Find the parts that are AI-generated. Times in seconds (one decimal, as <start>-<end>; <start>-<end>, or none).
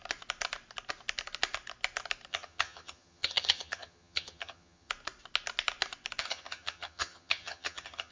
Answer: 2.3-4.9; 6.2-8.1